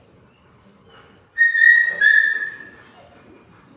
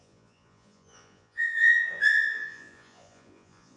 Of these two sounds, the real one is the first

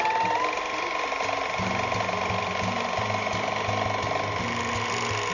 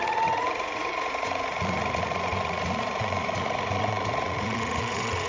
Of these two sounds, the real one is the first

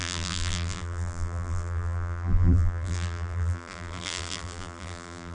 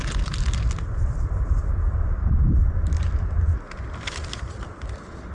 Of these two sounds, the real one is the second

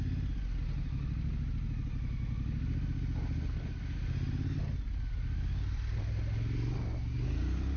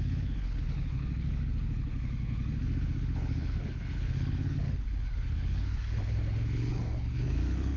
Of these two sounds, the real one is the first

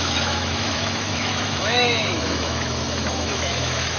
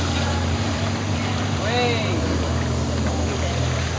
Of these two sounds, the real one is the second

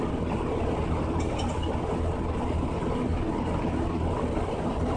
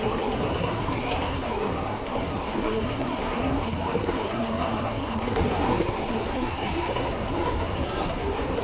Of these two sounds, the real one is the first